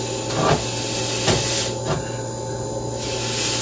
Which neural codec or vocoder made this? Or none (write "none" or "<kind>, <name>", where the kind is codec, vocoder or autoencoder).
none